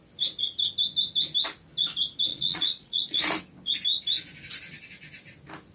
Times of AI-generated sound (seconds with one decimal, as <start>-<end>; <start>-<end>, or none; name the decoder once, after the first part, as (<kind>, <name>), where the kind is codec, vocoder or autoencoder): 2.3-3.2 (vocoder, Vocos)